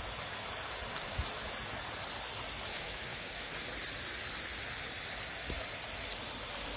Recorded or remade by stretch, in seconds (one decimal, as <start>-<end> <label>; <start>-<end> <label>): 0.0-0.9 recorded; 0.9-1.4 remade; 1.4-2.7 recorded; 2.7-3.6 remade; 3.6-6.8 recorded